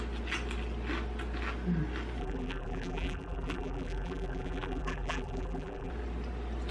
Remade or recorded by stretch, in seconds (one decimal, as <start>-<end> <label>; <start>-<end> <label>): 0.0-2.2 recorded; 2.2-5.9 remade; 5.9-6.7 recorded